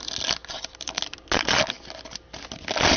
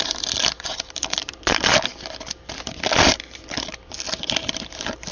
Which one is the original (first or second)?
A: first